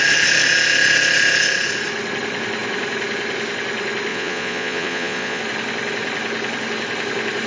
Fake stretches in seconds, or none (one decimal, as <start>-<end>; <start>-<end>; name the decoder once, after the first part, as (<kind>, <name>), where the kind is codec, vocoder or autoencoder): 4.1-5.4 (vocoder, Vocos)